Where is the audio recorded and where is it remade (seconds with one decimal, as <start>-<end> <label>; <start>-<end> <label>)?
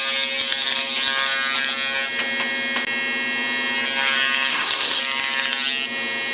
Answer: 0.0-4.5 recorded; 4.5-5.0 remade; 5.0-6.3 recorded